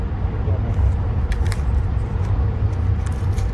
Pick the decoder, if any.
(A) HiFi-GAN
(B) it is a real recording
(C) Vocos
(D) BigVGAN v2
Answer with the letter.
D